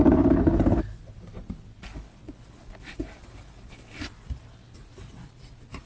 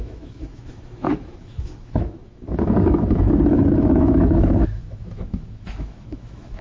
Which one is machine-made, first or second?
second